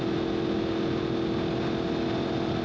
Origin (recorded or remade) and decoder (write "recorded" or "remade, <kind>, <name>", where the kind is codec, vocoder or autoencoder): recorded